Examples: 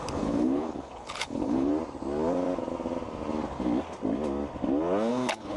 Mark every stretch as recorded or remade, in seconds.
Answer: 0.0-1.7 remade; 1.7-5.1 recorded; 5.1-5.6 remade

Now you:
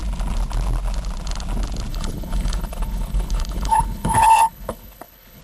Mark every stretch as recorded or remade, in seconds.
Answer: 0.0-1.9 recorded; 1.9-5.4 remade